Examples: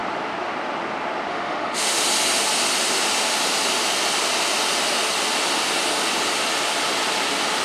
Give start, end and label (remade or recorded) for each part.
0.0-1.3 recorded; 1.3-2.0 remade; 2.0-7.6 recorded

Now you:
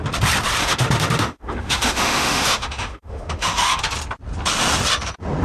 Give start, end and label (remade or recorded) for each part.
0.0-0.6 recorded; 0.6-3.8 remade; 3.8-5.4 recorded